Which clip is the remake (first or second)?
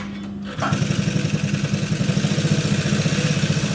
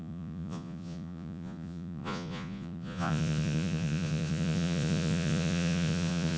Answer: second